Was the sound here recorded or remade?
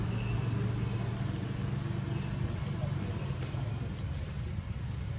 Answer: recorded